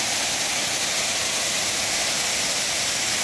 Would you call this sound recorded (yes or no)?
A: yes